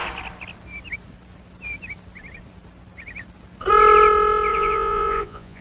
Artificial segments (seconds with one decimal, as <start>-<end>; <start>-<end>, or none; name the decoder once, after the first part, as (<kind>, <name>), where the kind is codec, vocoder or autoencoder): 4.5-5.6 (vocoder, Vocos)

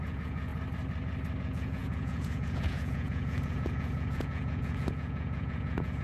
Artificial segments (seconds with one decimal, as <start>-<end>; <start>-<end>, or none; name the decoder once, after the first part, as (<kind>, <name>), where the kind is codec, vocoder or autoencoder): 0.0-0.5 (vocoder, Vocos); 1.4-6.0

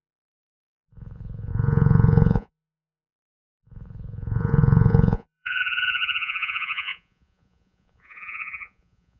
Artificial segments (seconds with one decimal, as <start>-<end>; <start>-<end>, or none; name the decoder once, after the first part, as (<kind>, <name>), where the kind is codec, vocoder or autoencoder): 0.0-9.2 (vocoder, Vocos)

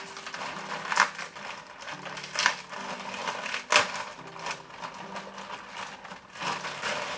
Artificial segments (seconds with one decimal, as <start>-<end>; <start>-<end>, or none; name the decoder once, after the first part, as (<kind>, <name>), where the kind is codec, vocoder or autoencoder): none

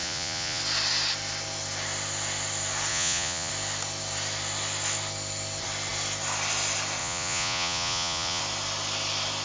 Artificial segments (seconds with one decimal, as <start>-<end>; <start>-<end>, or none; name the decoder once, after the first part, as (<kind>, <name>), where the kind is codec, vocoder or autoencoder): 0.0-0.6 (vocoder, Vocos); 2.9-3.5; 7.0-8.4